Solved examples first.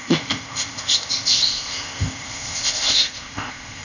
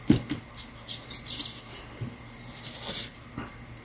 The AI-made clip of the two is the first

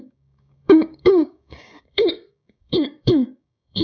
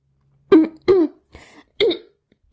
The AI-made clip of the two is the first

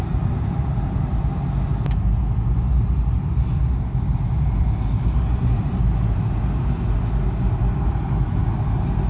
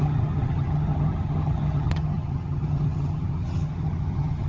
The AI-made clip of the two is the second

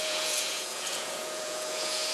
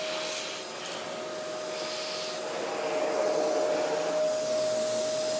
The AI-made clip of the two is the first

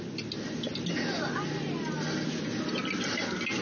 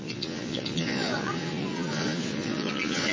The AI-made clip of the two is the second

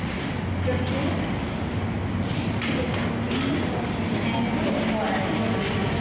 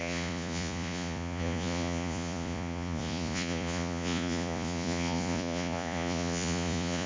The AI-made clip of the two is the second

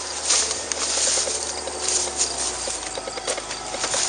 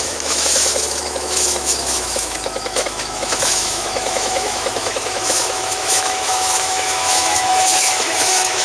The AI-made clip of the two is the second